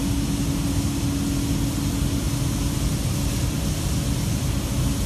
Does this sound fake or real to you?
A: real